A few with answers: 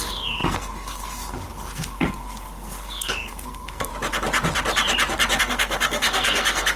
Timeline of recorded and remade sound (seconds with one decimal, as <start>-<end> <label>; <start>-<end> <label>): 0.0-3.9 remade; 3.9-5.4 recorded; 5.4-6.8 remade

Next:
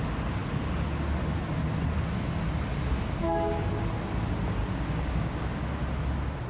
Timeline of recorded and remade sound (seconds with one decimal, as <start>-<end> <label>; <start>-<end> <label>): 0.0-3.2 recorded; 3.2-3.7 remade; 3.7-4.6 recorded; 4.6-5.6 remade; 5.6-6.5 recorded

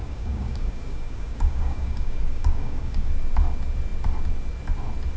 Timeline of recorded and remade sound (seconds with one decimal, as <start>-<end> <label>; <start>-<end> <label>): 0.0-3.1 remade; 3.1-5.2 recorded

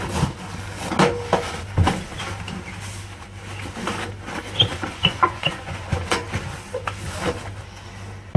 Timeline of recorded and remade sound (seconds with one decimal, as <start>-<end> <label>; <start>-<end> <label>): 0.0-4.7 recorded; 4.7-6.2 remade; 6.2-8.4 recorded

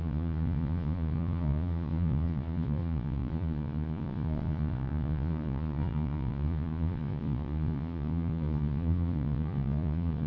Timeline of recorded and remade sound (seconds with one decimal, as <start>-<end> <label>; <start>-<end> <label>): 0.0-10.3 remade